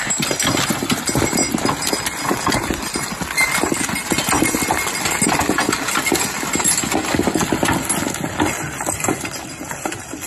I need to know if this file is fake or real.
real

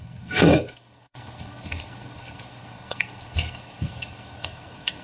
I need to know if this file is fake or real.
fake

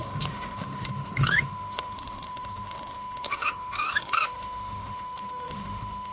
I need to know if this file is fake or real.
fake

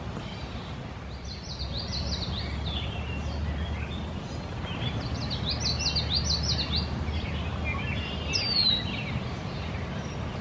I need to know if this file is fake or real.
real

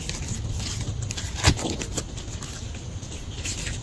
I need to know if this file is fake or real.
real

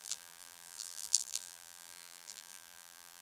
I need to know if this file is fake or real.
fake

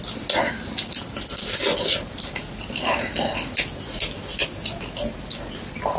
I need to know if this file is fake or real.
real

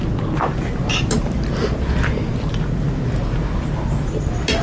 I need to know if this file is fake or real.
real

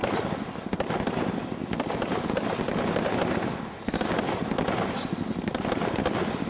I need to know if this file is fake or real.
real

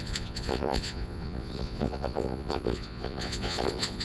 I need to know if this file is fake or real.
fake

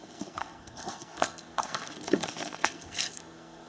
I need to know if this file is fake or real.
fake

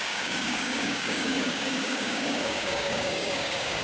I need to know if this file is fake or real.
fake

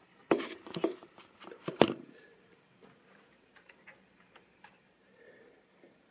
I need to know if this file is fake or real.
fake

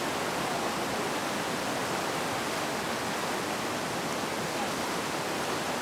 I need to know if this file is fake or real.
real